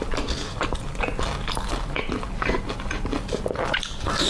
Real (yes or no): yes